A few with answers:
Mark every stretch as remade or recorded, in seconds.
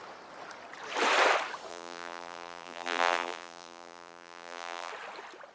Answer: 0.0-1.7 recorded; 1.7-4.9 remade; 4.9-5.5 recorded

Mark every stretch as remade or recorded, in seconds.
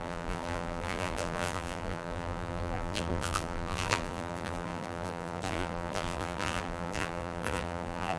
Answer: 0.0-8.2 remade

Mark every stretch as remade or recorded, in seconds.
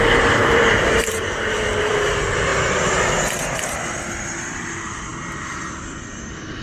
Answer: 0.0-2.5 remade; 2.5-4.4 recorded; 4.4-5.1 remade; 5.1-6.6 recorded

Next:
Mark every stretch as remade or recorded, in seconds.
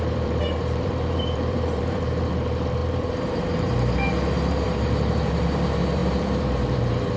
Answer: 0.0-7.2 remade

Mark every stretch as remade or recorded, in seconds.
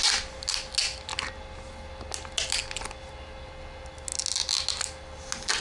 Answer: 0.0-5.6 recorded